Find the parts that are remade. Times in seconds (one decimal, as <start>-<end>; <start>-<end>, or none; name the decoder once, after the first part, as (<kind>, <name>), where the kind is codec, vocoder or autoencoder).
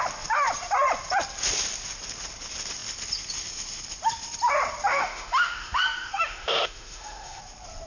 4.9-7.4 (autoencoder, DAC-VAE)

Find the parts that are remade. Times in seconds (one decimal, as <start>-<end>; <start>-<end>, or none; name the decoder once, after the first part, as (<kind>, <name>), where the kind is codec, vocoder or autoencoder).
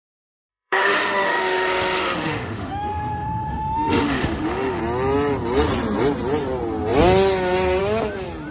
0.5-4.8 (autoencoder, DAC-VAE)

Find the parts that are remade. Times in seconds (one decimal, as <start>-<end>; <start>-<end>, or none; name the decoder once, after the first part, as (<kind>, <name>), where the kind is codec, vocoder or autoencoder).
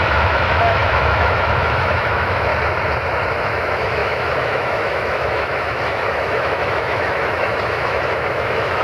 0.0-2.5 (autoencoder, DAC-VAE); 3.4-8.8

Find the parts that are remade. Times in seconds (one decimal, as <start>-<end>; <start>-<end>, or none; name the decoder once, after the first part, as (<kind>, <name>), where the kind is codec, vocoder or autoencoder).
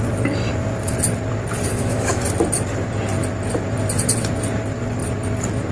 1.7-2.2 (autoencoder, DAC-VAE)